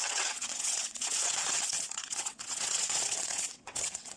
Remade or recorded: remade